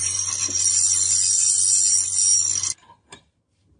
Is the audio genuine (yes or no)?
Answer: yes